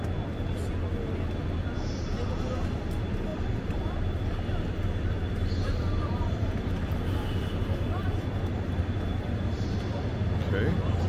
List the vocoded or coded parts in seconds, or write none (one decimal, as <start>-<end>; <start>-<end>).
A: 3.3-6.7

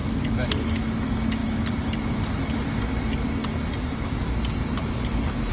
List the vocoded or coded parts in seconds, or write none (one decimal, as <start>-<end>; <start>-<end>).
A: 0.0-0.5; 1.4-2.8

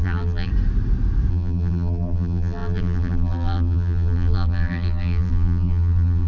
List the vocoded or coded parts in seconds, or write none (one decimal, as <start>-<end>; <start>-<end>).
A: 0.0-0.5; 1.3-6.3

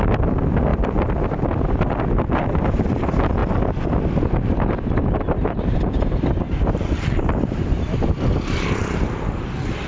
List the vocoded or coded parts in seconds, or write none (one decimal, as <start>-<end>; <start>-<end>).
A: 0.7-1.7; 3.4-7.8

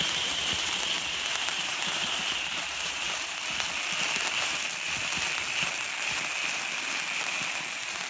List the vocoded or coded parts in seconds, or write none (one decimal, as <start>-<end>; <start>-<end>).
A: 0.0-3.4

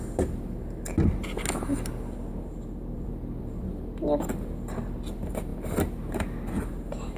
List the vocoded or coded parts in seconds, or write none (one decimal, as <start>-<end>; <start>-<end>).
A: none

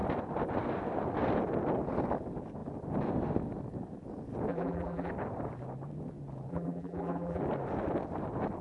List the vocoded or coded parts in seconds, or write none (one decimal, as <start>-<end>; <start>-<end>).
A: 4.5-5.1; 6.5-7.4

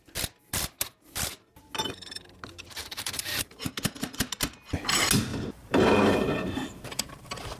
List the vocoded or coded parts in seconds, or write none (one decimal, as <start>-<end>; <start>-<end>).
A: 2.8-3.7; 5.3-7.6